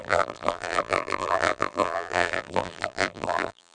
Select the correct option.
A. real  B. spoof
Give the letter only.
B